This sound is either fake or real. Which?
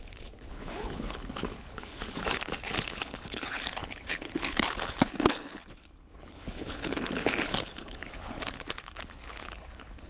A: fake